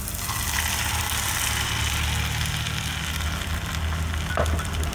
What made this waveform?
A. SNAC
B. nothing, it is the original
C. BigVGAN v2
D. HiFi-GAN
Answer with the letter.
B